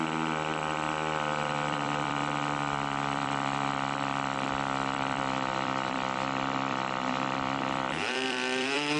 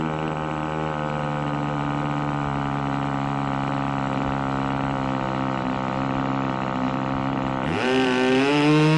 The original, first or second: second